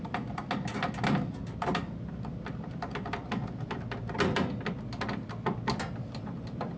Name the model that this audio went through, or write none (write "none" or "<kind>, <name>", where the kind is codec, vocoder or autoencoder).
none